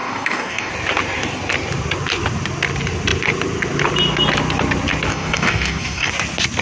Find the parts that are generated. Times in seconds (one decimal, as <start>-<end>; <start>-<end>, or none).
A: 0.0-0.7; 5.1-6.1